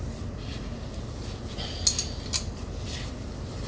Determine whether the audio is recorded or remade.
recorded